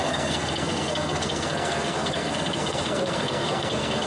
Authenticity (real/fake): fake